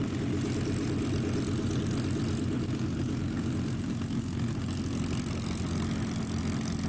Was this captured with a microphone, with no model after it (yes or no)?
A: yes